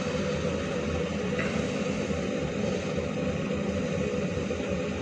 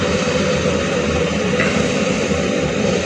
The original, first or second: first